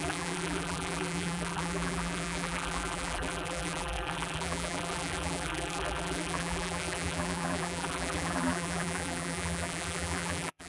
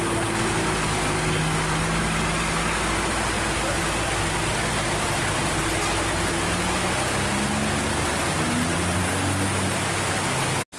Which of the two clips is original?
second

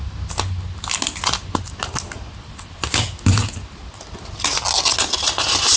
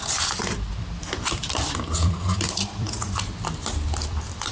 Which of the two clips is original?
first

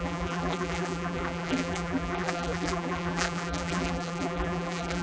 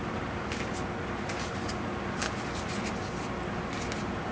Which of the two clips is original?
second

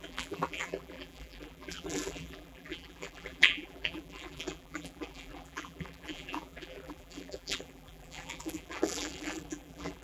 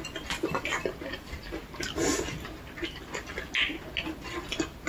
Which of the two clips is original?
second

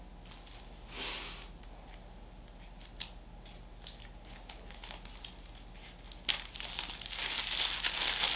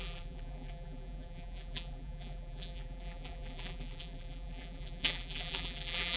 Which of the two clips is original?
first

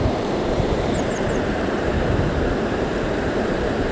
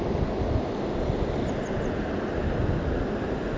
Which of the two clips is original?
second